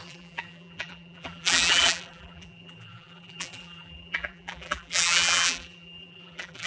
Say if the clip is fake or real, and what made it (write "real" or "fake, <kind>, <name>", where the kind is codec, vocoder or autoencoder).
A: fake, vocoder, BigVGAN v2